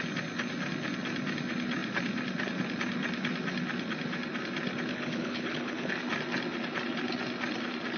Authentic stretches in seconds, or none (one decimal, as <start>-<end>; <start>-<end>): 0.0-4.9; 6.0-8.0